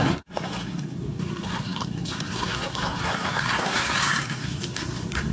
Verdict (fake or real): fake